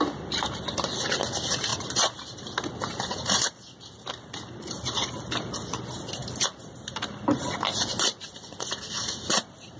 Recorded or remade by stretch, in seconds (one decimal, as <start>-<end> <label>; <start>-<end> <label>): 0.0-1.7 recorded; 1.7-2.6 remade; 2.6-6.2 recorded; 6.2-9.8 remade